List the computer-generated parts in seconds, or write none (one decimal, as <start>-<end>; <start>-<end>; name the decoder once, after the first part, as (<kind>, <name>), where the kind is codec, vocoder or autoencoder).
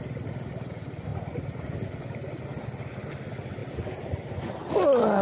none